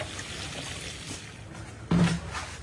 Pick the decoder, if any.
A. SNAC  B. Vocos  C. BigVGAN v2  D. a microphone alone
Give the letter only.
D